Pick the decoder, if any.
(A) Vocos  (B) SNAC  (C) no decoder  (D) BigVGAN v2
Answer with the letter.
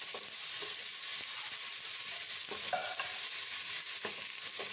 C